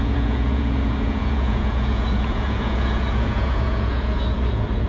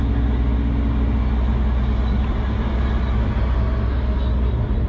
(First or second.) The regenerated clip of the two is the first